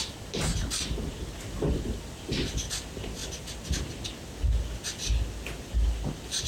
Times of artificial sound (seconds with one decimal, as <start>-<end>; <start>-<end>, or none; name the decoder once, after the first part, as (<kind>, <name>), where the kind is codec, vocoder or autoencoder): none